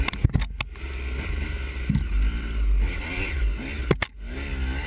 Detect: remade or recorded recorded